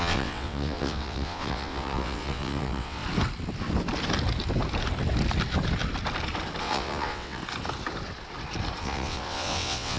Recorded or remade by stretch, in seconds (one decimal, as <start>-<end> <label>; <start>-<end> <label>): 0.0-3.0 remade; 3.0-6.6 recorded; 6.6-7.4 remade; 7.4-8.8 recorded; 8.8-10.0 remade